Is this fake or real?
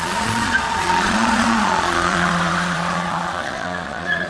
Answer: fake